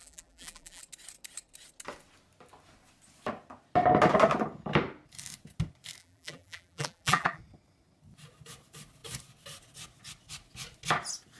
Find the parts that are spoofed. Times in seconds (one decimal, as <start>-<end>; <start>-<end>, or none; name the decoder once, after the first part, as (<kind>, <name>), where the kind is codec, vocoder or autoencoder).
0.0-0.8 (vocoder, BigVGAN v2); 6.0-7.4

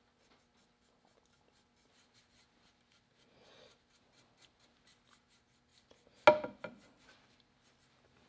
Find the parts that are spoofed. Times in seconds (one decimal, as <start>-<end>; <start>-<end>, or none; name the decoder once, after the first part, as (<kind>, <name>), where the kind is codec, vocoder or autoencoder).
none

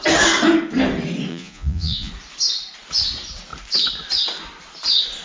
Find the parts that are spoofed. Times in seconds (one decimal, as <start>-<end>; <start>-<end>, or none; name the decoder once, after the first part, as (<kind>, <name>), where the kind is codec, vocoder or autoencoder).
1.3-2.1 (vocoder, Vocos)

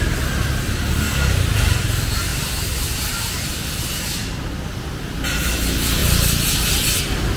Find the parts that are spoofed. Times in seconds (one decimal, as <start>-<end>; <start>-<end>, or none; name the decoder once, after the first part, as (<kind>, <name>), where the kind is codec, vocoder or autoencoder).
2.3-3.9 (vocoder, BigVGAN v2); 6.0-7.0

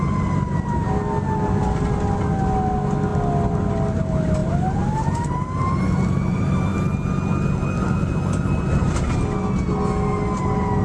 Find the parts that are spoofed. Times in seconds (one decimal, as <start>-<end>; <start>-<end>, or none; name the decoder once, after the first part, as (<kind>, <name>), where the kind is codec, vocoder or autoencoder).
none